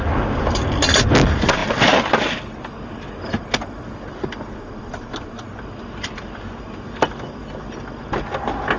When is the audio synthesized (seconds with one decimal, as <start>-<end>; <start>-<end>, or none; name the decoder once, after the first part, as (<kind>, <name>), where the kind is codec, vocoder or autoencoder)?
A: none